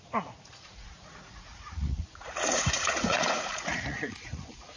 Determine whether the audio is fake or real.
fake